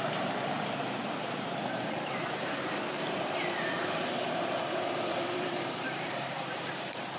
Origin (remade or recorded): remade